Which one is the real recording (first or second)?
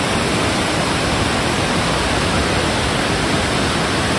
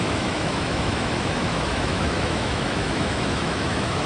first